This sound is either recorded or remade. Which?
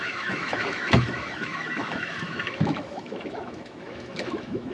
remade